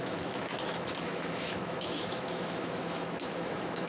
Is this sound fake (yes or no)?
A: yes